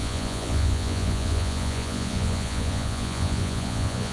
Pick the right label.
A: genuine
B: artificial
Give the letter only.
B